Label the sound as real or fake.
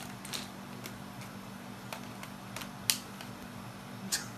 real